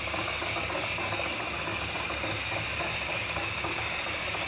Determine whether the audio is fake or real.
fake